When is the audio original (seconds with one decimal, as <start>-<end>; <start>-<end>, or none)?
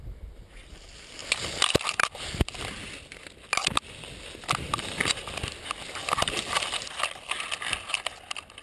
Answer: 0.0-8.6